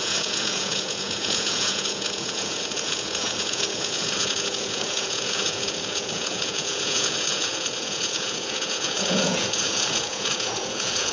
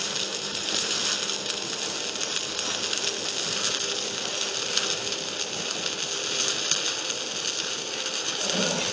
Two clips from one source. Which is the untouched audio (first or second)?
second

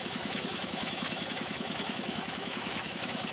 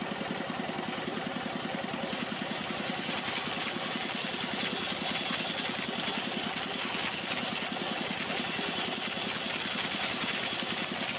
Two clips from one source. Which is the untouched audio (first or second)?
second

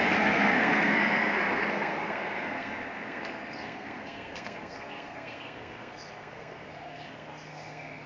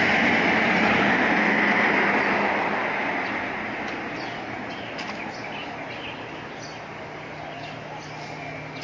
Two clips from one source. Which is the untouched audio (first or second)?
second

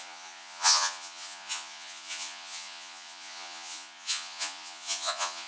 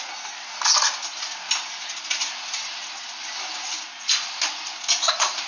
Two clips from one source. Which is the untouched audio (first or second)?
second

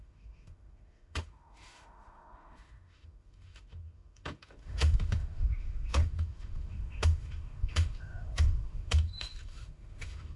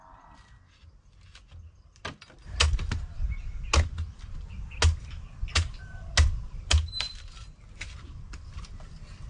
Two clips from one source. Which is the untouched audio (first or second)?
second